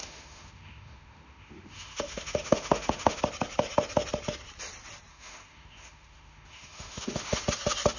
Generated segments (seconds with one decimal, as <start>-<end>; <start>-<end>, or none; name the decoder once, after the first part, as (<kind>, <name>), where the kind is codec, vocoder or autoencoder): 0.0-3.2 (autoencoder, DAC-VAE); 5.1-7.4

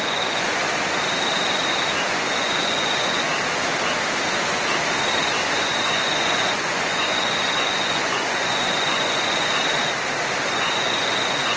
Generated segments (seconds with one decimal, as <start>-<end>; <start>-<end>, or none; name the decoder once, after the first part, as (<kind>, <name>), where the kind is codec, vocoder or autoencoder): 0.0-0.6 (vocoder, Vocos); 2.1-3.3; 5.3-9.6; 10.5-11.6

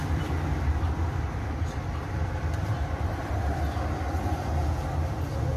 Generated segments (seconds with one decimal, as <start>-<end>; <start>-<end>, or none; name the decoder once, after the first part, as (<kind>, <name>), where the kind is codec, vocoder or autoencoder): 0.0-3.4 (vocoder, BigVGAN v2)

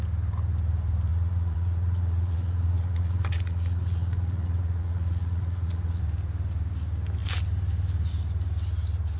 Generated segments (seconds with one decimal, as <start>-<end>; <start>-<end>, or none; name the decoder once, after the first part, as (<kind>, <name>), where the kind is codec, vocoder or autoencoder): 1.1-6.0 (vocoder, Vocos)

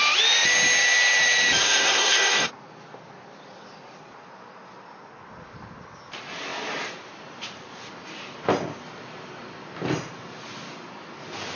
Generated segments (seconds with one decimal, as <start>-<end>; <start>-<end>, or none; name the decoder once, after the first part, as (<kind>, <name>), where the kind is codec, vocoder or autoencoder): 1.6-2.5 (codec, SNAC)

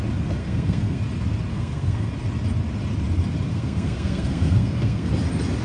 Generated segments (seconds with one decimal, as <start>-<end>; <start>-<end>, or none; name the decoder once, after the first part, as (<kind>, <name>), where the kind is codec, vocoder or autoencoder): 0.4-1.0 (codec, SNAC); 1.5-2.1; 3.5-5.1

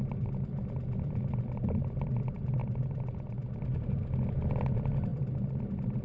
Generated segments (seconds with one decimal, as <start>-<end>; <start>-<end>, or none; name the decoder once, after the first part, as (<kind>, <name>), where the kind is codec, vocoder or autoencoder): none

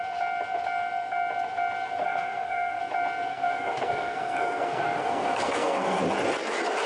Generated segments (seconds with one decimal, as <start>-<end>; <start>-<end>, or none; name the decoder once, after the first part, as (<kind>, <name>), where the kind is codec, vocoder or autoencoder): 2.0-2.8 (codec, SNAC); 3.3-6.0